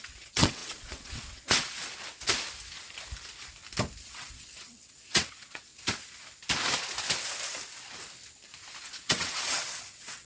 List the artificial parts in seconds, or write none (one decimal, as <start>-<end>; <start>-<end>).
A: 0.0-1.9; 4.0-5.7; 8.8-10.2